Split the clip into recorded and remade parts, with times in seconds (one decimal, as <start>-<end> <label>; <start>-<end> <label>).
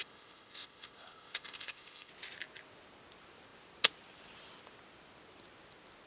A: 0.0-2.1 remade; 2.1-6.1 recorded